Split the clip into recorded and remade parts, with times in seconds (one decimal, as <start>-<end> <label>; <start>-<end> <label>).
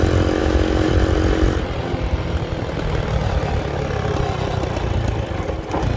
0.0-0.4 recorded; 0.4-0.9 remade; 0.9-6.0 recorded